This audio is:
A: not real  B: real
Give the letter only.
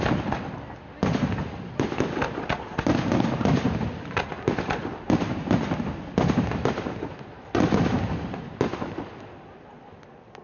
B